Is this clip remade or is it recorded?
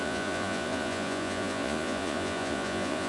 remade